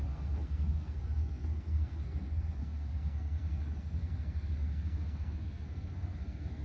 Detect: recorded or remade remade